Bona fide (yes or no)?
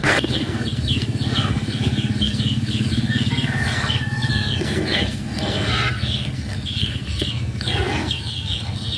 no